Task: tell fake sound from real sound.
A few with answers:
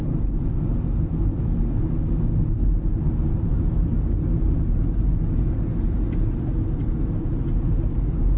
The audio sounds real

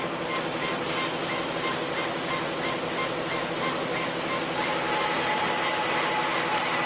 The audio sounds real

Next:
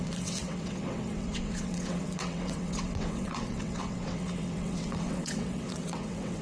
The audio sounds fake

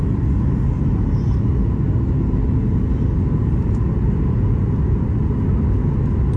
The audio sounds real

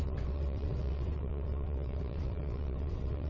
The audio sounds fake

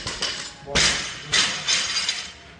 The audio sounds real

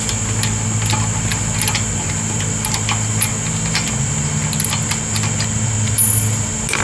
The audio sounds real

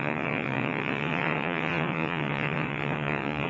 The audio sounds fake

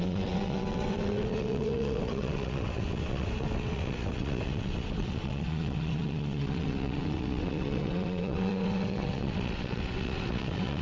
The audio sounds fake